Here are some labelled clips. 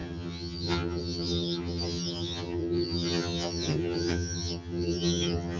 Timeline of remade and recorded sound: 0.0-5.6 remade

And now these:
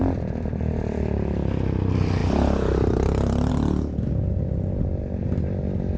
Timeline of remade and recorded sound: 0.0-6.0 recorded

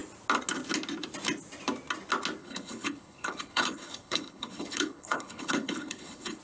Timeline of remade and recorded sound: 0.0-2.4 recorded; 2.4-6.4 remade